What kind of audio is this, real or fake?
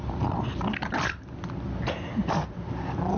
real